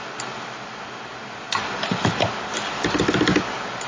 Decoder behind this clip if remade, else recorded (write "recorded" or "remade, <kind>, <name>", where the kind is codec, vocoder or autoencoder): recorded